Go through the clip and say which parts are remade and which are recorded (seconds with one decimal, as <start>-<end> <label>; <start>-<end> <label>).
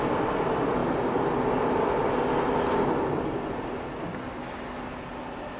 0.0-5.6 recorded